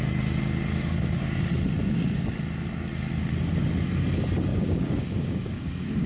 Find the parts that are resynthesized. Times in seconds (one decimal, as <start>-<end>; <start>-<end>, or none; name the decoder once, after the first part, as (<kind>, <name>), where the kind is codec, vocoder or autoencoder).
4.5-6.1 (codec, DAC)